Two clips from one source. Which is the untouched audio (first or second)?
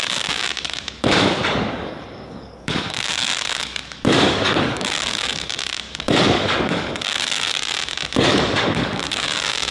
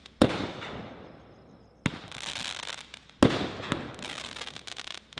second